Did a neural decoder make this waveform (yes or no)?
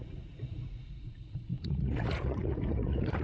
yes